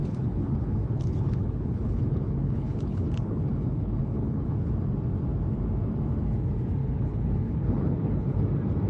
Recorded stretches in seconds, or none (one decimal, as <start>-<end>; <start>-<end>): 4.7-6.8; 8.4-8.9